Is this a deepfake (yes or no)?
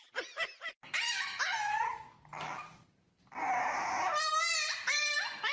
no